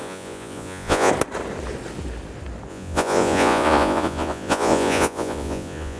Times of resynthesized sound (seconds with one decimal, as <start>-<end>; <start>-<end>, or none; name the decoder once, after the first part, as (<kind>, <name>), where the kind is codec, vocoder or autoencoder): 0.0-1.1 (vocoder, Vocos); 2.7-6.0